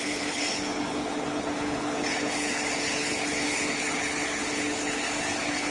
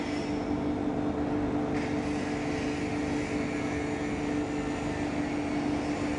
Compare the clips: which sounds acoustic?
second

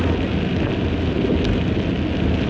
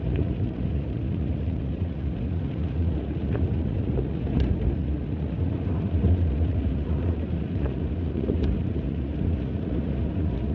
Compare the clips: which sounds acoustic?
first